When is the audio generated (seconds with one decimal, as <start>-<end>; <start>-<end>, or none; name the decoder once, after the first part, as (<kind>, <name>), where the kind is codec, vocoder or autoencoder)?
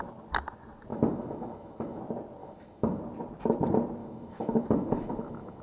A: 0.9-2.0 (autoencoder, DAC-VAE); 2.4-3.0; 4.0-5.6